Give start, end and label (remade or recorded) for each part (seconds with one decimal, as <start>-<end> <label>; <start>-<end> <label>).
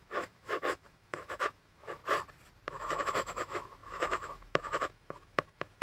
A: 0.0-2.0 remade; 2.0-2.7 recorded; 2.7-5.8 remade